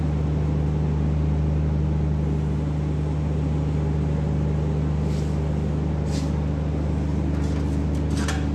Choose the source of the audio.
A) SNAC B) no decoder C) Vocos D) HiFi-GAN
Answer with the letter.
B